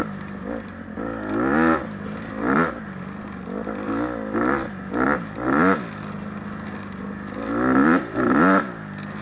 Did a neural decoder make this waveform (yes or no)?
no